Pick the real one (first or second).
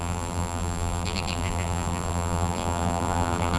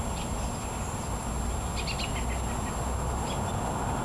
second